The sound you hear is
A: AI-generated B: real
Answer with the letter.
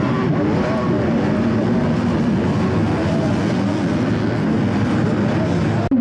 B